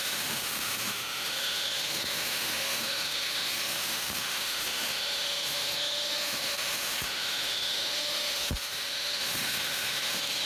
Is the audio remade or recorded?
remade